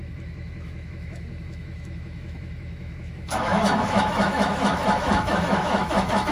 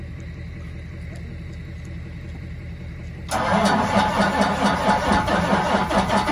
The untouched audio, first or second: second